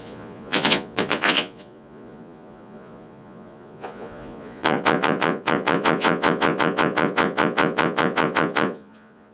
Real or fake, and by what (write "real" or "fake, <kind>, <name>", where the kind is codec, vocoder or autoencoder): fake, vocoder, Vocos